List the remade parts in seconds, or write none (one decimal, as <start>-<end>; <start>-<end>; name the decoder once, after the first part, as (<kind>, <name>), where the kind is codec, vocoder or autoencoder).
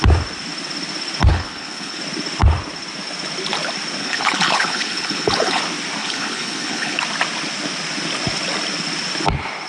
1.3-2.0 (codec, HILCodec); 4.0-5.6; 6.0-7.0